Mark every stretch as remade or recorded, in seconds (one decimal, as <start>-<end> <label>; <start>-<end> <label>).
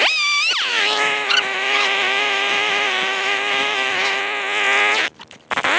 0.0-0.7 recorded; 0.7-4.2 remade; 4.2-5.8 recorded